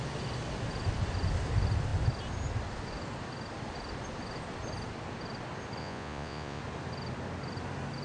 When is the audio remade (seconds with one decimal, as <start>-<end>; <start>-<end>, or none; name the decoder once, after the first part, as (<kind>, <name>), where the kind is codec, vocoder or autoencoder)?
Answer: 5.8-6.6 (vocoder, Vocos)